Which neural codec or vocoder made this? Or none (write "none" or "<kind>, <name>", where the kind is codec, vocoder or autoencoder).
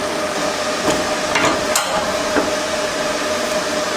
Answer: none